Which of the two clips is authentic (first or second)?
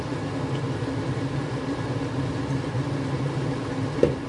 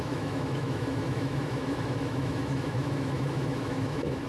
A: first